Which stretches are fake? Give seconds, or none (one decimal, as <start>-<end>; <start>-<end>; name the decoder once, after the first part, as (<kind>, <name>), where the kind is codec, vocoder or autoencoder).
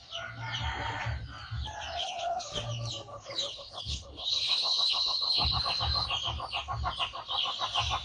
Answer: 2.0-2.5 (codec, HILCodec); 3.1-5.6